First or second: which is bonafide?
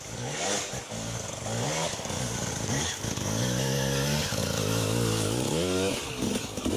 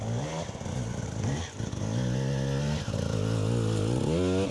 second